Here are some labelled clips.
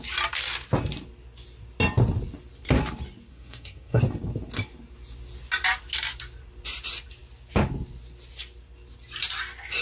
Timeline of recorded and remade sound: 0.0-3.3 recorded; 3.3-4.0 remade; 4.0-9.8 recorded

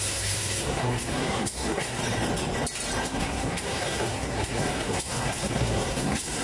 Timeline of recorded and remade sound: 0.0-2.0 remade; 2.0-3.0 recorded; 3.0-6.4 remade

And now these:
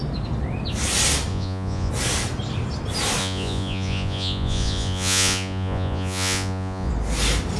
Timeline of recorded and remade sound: 0.0-1.3 recorded; 1.3-1.9 remade; 1.9-3.2 recorded; 3.2-6.9 remade; 6.9-7.6 recorded